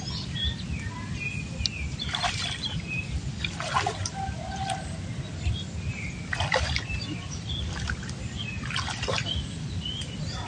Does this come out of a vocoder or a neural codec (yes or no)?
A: no